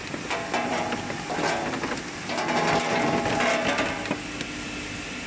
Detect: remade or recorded recorded